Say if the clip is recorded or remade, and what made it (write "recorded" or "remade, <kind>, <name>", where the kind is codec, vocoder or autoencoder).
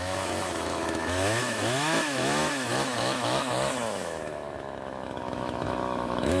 remade, autoencoder, DAC-VAE